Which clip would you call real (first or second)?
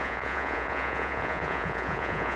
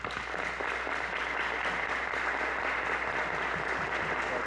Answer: second